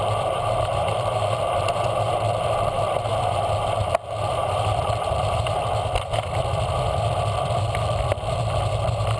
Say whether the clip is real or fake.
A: fake